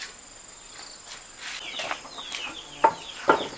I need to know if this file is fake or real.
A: real